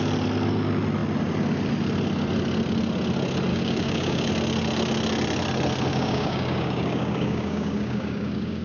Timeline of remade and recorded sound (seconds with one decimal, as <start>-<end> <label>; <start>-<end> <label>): 0.0-3.5 recorded; 3.5-4.3 remade; 4.3-5.9 recorded; 5.9-8.6 remade